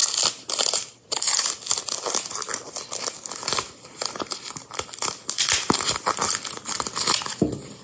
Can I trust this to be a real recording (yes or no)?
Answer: yes